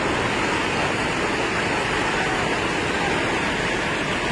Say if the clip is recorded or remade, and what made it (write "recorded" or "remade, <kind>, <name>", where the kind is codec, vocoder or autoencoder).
recorded